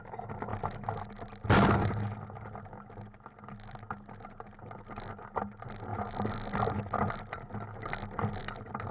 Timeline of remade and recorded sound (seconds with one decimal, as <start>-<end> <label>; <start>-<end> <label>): 0.0-8.9 recorded